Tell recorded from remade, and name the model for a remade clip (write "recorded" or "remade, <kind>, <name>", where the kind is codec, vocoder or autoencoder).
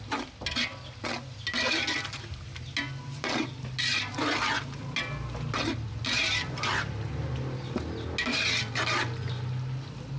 recorded